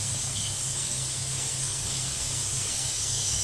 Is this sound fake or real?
fake